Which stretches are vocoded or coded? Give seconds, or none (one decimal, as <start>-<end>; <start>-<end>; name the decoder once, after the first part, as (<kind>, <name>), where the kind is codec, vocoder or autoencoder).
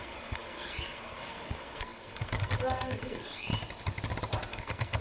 0.0-3.5 (codec, SNAC); 4.5-5.0